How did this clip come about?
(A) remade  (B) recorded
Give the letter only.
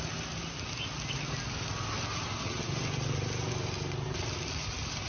B